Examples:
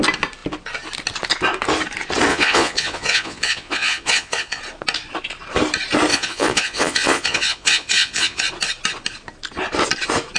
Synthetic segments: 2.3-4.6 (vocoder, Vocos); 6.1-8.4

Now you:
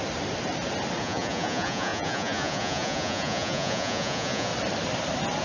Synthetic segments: 1.0-4.5 (vocoder, Vocos)